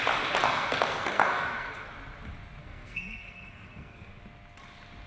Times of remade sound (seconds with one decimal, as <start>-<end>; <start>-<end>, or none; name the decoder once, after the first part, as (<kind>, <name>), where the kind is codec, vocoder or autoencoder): 0.4-1.9 (codec, SNAC); 2.6-4.2